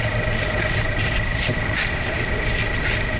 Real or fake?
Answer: real